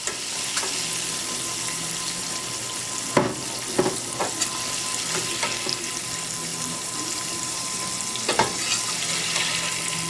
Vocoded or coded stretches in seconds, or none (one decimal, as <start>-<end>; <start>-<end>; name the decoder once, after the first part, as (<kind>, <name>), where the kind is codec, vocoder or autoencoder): 6.5-7.8 (vocoder, BigVGAN v2)